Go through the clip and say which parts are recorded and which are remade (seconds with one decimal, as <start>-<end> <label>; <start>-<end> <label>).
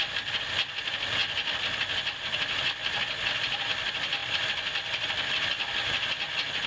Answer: 0.0-6.7 recorded